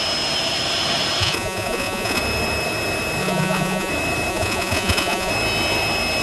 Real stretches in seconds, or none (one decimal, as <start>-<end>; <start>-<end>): 0.0-1.2; 2.2-3.2; 3.9-4.3; 5.3-6.2